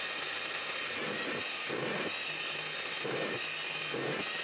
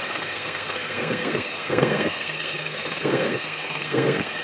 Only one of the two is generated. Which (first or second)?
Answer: second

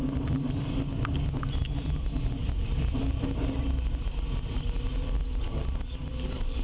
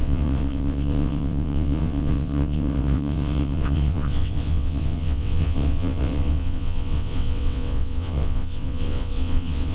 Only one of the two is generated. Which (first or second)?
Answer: second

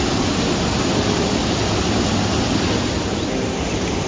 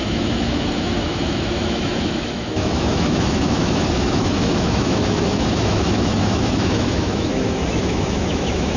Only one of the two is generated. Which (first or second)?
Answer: second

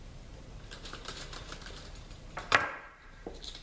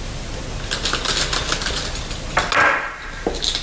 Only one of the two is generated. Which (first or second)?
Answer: first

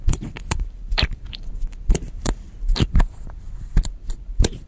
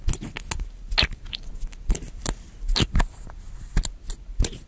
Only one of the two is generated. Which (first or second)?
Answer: first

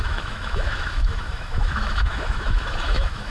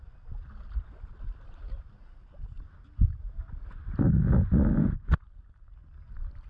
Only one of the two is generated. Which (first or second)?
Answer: first